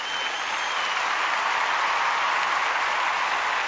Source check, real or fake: real